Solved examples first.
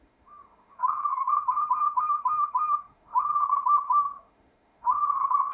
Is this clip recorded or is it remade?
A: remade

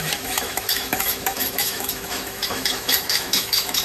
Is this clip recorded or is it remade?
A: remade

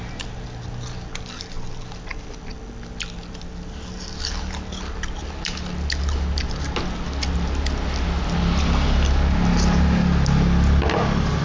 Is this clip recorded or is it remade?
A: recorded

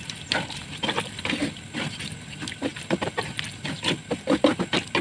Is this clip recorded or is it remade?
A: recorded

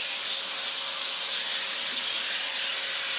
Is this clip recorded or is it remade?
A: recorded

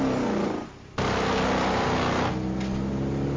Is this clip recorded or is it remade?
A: recorded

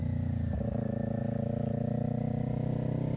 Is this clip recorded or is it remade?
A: recorded